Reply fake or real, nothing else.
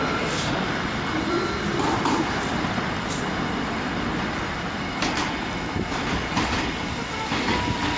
real